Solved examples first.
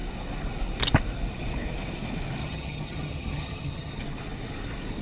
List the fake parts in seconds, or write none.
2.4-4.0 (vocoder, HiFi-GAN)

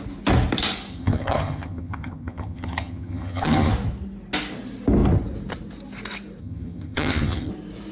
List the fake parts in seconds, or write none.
0.9-3.7 (vocoder, HiFi-GAN); 6.4-7.5

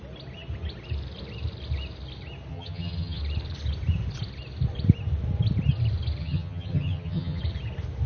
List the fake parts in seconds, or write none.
2.5-3.2 (vocoder, HiFi-GAN); 6.2-7.4

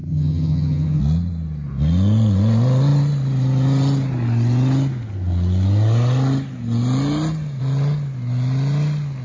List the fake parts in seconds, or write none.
0.0-1.0 (vocoder, HiFi-GAN)

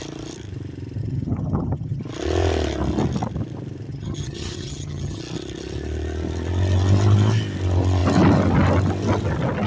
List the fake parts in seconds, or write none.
1.0-2.0 (vocoder, HiFi-GAN); 3.9-5.2